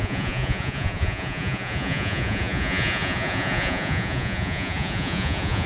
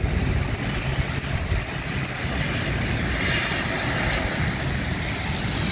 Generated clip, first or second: first